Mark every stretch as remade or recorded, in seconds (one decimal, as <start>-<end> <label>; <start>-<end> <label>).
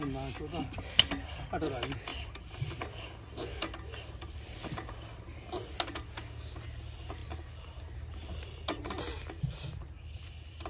0.0-2.1 recorded; 2.1-2.9 remade; 2.9-7.2 recorded; 7.2-7.8 remade; 7.8-10.7 recorded